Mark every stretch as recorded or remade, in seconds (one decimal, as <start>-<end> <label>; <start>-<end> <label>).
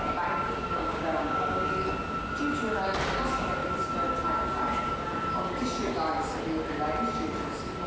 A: 0.0-0.8 recorded; 0.8-1.7 remade; 1.7-7.9 recorded